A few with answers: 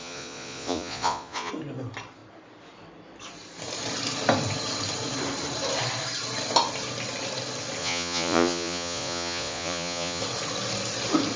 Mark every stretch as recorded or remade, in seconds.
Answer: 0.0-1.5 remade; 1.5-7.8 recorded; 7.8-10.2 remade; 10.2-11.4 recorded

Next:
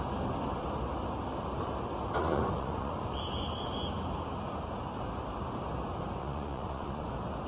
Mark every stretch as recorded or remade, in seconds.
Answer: 0.0-2.2 recorded; 2.2-3.2 remade; 3.2-6.2 recorded; 6.2-7.1 remade; 7.1-7.5 recorded

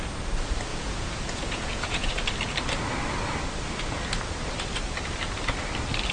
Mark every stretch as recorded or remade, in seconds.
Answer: 0.0-0.7 recorded; 0.7-2.1 remade; 2.1-6.1 recorded

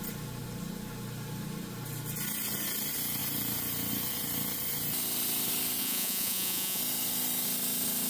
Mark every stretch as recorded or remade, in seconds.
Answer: 0.0-5.8 recorded; 5.8-6.8 remade; 6.8-8.1 recorded